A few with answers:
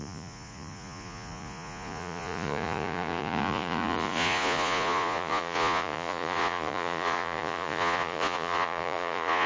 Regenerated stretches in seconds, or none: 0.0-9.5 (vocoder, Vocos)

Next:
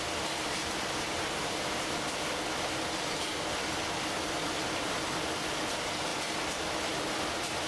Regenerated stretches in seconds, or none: none

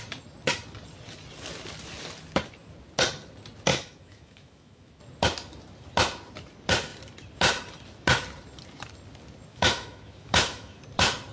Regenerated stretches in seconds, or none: 3.7-5.0 (autoencoder, DAC-VAE); 9.5-10.8

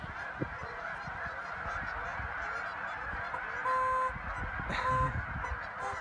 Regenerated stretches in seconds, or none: 0.0-2.1 (vocoder, BigVGAN v2); 2.6-3.6; 5.5-6.0

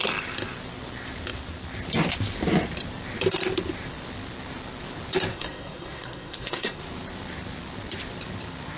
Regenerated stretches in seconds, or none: 5.3-6.8 (codec, SNAC)

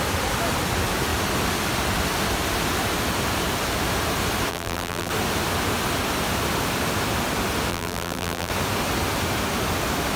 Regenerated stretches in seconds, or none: 4.5-5.1 (vocoder, BigVGAN v2); 7.7-8.5

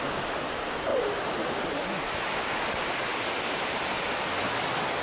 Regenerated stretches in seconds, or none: none

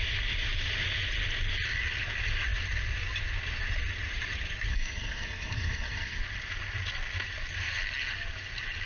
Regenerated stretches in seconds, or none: 4.7-6.2 (codec, SNAC)